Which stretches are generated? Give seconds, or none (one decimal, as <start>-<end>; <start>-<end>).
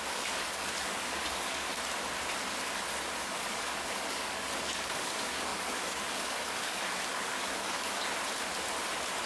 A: 0.0-1.7; 3.2-8.0